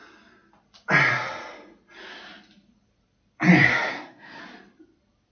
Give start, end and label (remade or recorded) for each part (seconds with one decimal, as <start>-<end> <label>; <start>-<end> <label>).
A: 0.0-3.9 recorded; 3.9-4.4 remade; 4.4-5.3 recorded